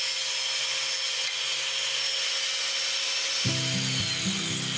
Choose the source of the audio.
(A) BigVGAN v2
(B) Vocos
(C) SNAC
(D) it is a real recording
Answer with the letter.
D